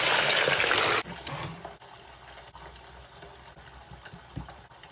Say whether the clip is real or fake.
real